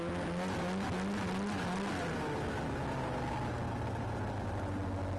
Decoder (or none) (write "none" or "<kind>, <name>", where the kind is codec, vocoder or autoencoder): none